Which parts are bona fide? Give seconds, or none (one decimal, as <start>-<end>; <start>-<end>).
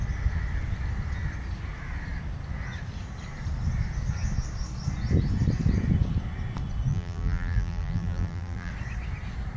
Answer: 0.0-6.9; 8.7-9.6